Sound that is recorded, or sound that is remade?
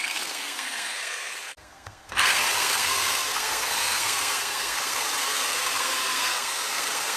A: remade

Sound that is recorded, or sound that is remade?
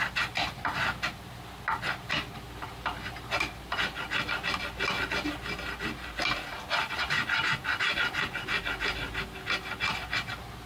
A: recorded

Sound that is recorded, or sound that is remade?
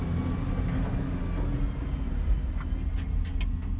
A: recorded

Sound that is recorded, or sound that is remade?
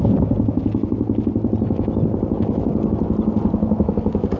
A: recorded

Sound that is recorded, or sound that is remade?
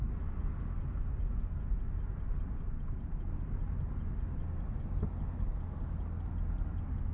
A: recorded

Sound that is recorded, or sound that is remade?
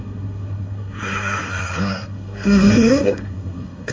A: remade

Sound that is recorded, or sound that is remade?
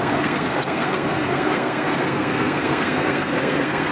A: remade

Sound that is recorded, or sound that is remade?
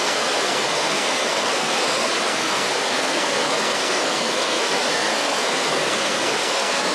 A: remade